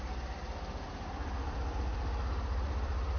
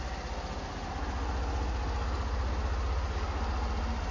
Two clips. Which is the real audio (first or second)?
second